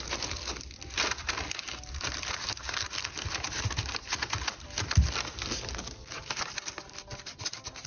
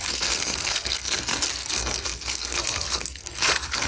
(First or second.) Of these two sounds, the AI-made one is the second